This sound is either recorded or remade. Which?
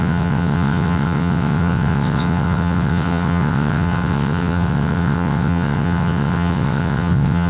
remade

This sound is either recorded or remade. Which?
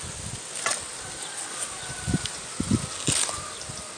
recorded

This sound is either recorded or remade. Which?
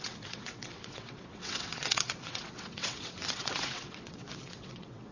remade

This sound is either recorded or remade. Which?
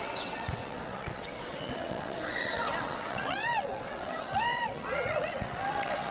remade